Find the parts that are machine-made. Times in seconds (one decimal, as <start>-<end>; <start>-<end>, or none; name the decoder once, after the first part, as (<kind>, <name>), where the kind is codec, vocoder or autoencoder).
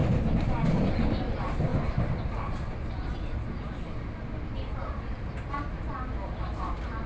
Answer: none